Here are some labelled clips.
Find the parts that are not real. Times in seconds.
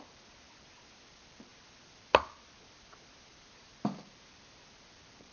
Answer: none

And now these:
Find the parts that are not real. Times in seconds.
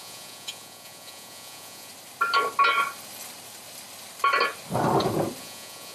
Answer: 0.0-1.9; 5.4-5.9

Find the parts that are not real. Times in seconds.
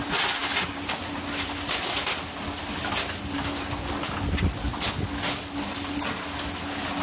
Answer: none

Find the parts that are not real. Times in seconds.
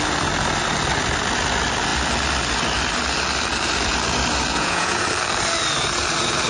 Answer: 4.5-5.0